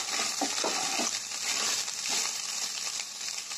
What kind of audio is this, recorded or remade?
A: remade